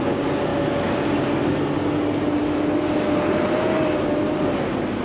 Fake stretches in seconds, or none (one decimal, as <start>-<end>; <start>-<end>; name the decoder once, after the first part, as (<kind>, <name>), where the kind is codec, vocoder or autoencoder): none